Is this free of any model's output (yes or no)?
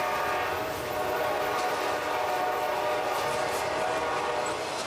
yes